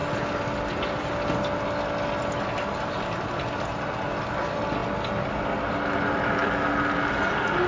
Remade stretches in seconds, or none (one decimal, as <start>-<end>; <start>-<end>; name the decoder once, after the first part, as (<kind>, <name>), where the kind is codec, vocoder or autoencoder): none